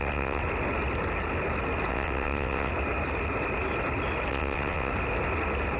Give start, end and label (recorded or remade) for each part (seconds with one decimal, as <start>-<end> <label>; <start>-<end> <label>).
0.0-0.4 remade; 0.4-1.9 recorded; 1.9-2.7 remade; 2.7-4.3 recorded; 4.3-4.9 remade; 4.9-5.8 recorded